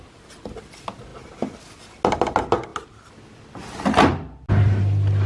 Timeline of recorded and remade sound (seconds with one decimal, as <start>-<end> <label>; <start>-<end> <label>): 0.0-5.3 recorded